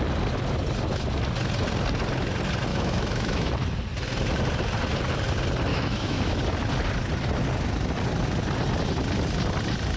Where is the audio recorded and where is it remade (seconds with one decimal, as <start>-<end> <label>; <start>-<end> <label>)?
0.0-2.7 recorded; 2.7-3.5 remade; 3.5-5.7 recorded; 5.7-6.4 remade; 6.4-10.0 recorded